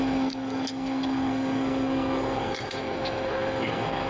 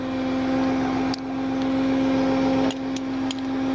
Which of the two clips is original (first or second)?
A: second